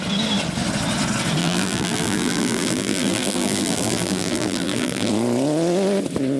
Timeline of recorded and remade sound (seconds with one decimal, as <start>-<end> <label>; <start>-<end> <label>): 0.0-1.4 recorded; 1.4-5.1 remade; 5.1-6.4 recorded